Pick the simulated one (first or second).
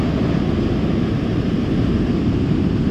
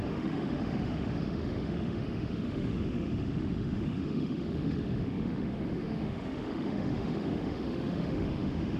second